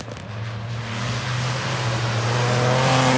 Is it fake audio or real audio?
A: real